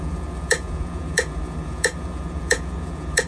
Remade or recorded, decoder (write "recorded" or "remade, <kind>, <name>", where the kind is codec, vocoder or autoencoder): remade, vocoder, Vocos